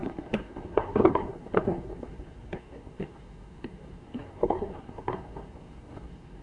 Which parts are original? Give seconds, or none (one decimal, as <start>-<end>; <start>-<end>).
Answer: none